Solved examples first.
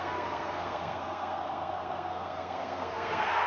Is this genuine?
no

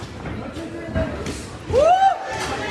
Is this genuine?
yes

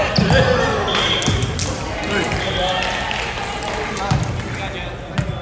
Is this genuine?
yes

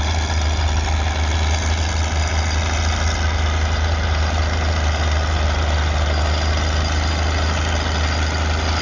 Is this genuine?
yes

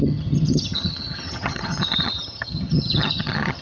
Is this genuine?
no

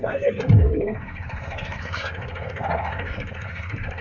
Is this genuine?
no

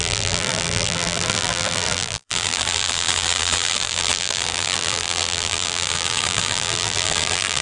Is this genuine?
no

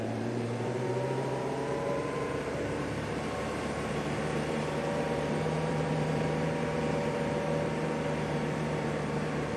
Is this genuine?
no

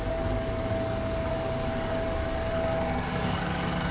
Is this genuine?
no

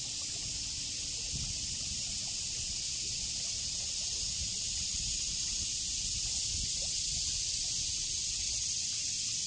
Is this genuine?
yes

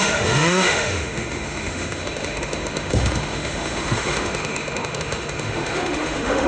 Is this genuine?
no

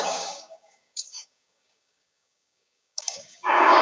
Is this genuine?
no